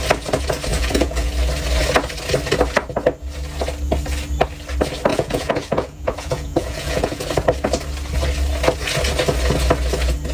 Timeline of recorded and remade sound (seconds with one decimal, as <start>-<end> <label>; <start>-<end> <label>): 0.0-0.7 recorded; 0.7-1.3 remade; 1.3-5.1 recorded; 5.1-7.2 remade; 7.2-10.3 recorded